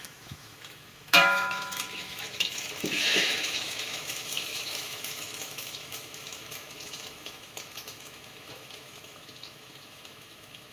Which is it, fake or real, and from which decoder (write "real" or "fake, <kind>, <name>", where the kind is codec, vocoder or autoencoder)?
fake, autoencoder, DAC-VAE